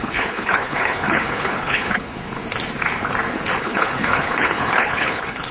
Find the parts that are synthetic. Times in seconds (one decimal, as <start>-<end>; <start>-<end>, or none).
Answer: 0.0-2.2; 3.6-5.5